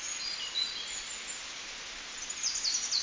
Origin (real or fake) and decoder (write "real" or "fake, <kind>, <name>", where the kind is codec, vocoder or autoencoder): real